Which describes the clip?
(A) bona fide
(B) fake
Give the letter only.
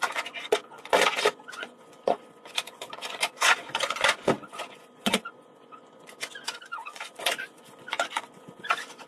B